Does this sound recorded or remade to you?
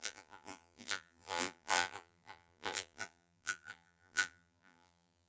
remade